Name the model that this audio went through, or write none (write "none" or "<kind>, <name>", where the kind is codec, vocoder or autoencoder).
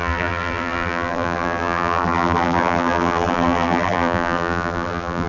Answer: vocoder, BigVGAN v2